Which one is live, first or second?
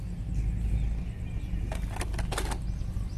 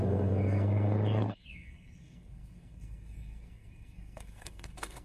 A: first